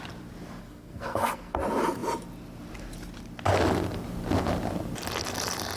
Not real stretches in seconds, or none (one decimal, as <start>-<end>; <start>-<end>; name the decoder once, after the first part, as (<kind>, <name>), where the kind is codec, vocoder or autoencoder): 0.6-1.6 (codec, SNAC)